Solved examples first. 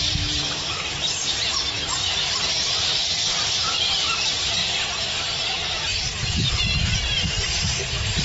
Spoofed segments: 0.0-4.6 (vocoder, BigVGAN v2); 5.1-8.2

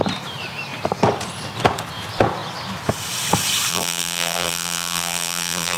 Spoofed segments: 3.7-5.8 (vocoder, BigVGAN v2)

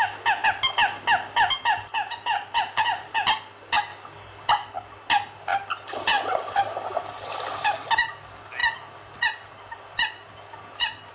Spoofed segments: 5.5-7.9 (vocoder, BigVGAN v2)

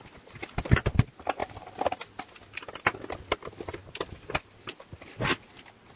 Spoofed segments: 1.4-3.2 (vocoder, BigVGAN v2); 3.8-4.8

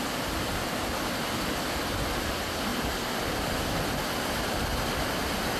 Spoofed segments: none